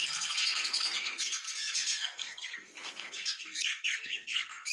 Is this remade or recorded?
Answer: remade